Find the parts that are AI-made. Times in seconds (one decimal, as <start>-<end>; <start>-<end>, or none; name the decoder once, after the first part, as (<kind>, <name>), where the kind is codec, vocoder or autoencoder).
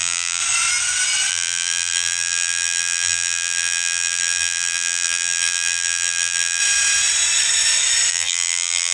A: 0.0-0.4 (vocoder, BigVGAN v2); 1.3-6.6; 8.1-8.9